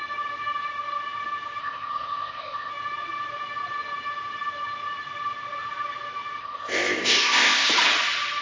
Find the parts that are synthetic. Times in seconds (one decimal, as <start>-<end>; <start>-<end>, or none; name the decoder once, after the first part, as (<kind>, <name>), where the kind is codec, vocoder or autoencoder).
1.6-2.7 (codec, ZipCodec); 6.4-7.7